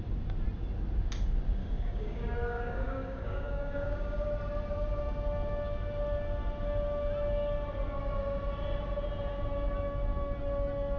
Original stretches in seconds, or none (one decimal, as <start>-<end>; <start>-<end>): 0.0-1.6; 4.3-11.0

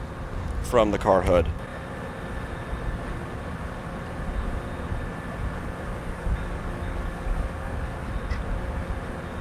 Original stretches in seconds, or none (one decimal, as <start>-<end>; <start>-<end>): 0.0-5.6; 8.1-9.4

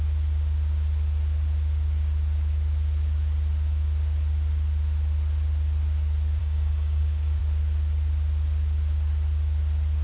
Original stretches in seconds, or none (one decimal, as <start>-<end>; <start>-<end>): 0.0-6.4; 7.4-10.0